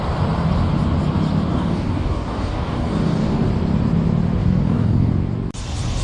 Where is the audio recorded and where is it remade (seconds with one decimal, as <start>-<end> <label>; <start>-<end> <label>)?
0.0-1.5 recorded; 1.5-3.5 remade; 3.5-4.4 recorded; 4.4-5.1 remade; 5.1-6.0 recorded